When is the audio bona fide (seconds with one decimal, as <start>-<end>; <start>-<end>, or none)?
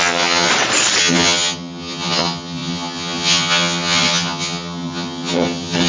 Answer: 0.5-1.0